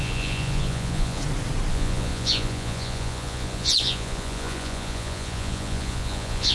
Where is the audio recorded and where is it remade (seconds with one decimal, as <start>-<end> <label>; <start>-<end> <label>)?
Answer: 0.0-1.2 remade; 1.2-1.7 recorded; 1.7-6.5 remade